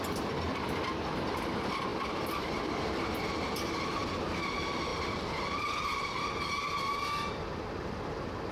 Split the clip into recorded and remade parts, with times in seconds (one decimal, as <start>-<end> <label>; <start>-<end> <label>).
0.0-1.9 recorded; 1.9-3.3 remade; 3.3-4.9 recorded; 4.9-6.3 remade; 6.3-8.5 recorded